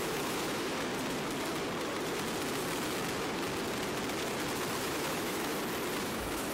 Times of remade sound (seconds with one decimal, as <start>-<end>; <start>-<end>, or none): 0.0-0.9; 4.8-5.5; 6.0-6.5